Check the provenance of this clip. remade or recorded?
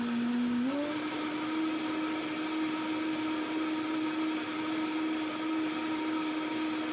recorded